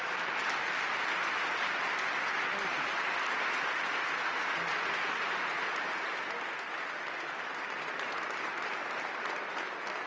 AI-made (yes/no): no